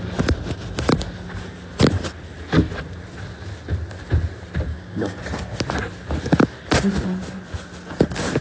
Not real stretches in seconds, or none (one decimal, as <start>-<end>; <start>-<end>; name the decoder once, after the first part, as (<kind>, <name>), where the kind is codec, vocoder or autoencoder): 4.7-5.2 (codec, DAC)